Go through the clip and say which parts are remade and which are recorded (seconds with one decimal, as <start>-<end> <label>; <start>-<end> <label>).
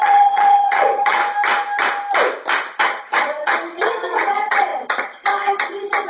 0.0-1.2 remade; 1.2-2.8 recorded; 2.8-6.1 remade